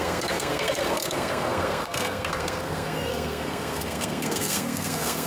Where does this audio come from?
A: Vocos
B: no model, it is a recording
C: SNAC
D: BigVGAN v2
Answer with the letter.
C